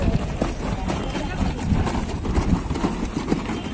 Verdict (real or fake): real